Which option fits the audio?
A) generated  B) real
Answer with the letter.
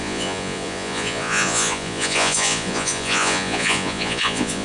A